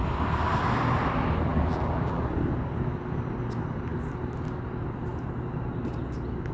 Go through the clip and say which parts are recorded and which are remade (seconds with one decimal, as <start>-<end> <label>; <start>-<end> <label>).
0.0-1.5 recorded; 1.5-2.2 remade; 2.2-6.5 recorded